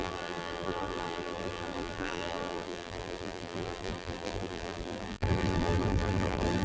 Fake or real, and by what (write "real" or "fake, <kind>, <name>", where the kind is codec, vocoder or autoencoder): fake, vocoder, BigVGAN v2